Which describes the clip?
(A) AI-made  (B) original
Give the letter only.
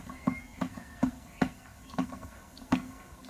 A